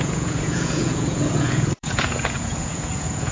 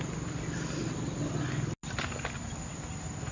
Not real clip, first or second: first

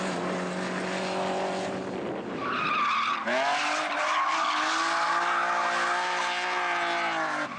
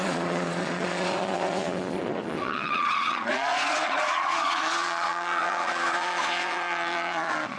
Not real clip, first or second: second